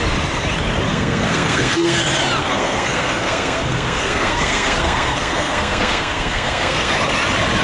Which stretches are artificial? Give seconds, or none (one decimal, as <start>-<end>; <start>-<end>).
0.9-2.0; 2.4-6.9